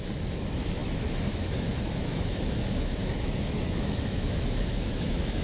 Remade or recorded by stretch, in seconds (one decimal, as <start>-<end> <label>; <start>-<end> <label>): 0.0-5.4 remade